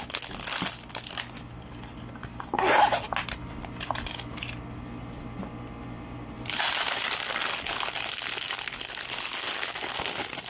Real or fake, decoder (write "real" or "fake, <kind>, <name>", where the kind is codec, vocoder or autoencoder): real